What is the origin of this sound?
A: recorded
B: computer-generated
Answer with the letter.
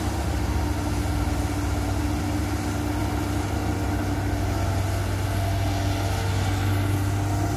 A